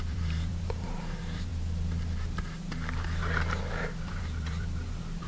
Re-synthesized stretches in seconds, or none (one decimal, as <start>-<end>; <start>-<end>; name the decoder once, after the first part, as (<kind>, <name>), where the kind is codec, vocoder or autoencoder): 0.0-1.5 (vocoder, BigVGAN v2); 4.1-5.3